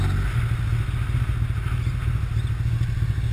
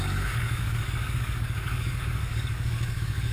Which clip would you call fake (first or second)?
second